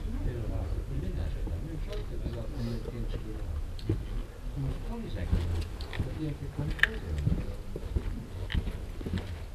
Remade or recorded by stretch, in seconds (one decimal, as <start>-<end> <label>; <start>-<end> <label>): 0.0-2.0 recorded; 2.0-2.6 remade; 2.6-9.5 recorded

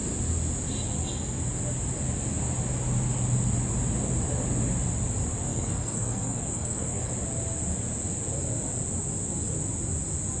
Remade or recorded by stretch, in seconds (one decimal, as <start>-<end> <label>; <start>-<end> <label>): 0.0-5.5 recorded; 5.5-7.1 remade; 7.1-10.4 recorded

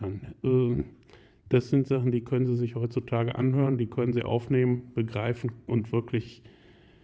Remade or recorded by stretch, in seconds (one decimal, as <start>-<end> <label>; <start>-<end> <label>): 0.0-4.3 remade; 4.3-5.6 recorded; 5.6-7.0 remade

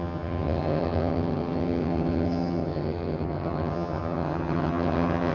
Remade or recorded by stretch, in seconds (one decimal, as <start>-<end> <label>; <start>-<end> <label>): 0.0-5.3 remade

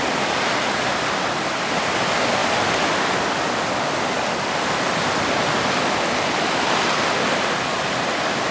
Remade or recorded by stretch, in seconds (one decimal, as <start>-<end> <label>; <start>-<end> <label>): 0.0-8.5 recorded

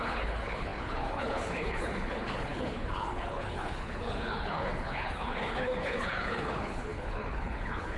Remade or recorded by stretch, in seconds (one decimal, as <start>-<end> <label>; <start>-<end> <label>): 0.0-8.0 remade

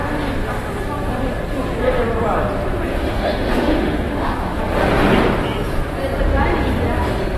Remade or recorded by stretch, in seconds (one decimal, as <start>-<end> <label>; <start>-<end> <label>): 0.0-2.9 recorded; 2.9-4.6 remade; 4.6-7.4 recorded